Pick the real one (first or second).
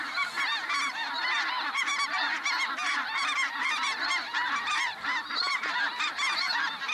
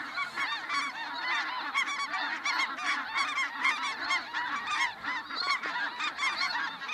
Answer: second